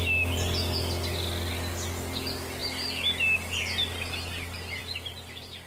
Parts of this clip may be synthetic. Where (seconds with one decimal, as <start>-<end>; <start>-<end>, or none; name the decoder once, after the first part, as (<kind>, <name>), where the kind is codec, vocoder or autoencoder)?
none